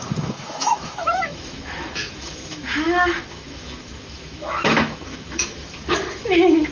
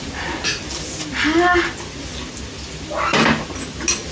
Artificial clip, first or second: first